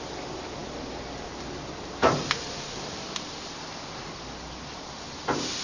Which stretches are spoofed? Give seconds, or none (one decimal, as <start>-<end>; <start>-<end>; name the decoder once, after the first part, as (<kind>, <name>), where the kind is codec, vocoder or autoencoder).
none

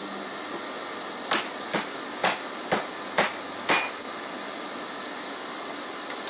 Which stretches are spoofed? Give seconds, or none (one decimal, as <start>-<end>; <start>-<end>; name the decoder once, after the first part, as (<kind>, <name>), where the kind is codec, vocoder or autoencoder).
none

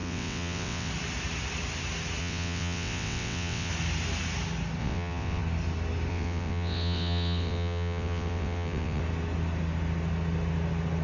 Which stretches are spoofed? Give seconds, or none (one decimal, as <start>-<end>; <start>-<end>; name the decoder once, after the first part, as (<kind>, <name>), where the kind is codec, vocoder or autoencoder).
0.0-0.9 (vocoder, WaveNeXt); 2.2-3.7; 4.8-5.4; 6.1-9.0

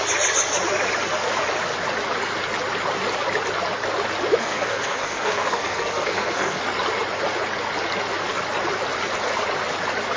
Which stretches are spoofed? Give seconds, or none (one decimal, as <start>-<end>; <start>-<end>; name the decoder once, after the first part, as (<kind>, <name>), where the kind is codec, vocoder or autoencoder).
4.4-6.6 (codec, SNAC)

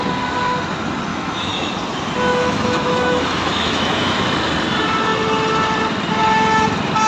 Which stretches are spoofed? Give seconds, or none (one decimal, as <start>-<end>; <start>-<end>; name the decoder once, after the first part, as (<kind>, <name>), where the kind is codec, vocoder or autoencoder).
1.1-1.7 (autoencoder, DAC-VAE); 2.3-4.2

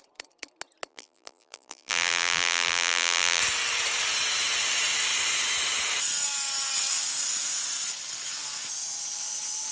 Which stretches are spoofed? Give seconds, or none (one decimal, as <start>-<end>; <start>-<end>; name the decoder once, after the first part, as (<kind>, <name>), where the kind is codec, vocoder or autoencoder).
0.9-3.4 (vocoder, BigVGAN v2)

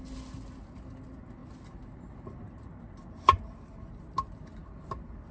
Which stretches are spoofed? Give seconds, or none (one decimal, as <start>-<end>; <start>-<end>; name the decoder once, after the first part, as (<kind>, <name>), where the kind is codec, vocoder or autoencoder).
none

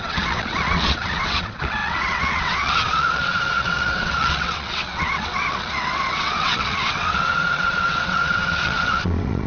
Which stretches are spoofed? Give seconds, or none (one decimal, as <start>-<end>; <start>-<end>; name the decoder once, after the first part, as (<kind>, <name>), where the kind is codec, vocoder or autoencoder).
0.0-9.5 (vocoder, WaveNeXt)